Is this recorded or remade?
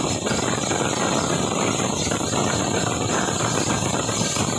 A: recorded